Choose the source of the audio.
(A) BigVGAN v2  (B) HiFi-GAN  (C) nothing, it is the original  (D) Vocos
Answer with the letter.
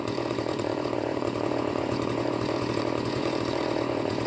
D